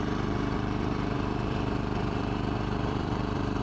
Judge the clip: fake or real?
fake